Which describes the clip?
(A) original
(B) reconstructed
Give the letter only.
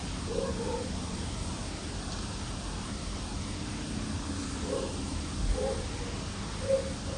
A